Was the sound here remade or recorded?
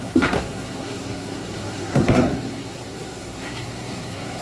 remade